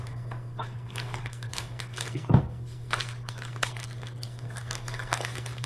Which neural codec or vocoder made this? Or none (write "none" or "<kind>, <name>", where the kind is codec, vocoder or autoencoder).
codec, SNAC